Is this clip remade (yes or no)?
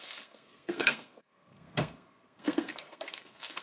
yes